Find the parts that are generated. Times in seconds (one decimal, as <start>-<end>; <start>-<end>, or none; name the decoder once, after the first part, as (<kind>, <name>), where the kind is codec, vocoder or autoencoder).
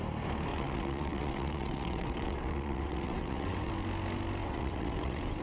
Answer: 0.5-3.7 (vocoder, WaveNeXt); 4.4-5.4